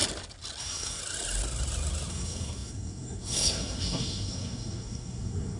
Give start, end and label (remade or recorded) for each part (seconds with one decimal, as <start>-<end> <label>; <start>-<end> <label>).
0.0-0.6 recorded; 0.6-1.0 remade; 1.0-2.1 recorded; 2.1-5.6 remade